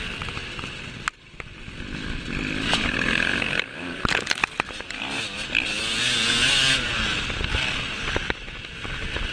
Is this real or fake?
real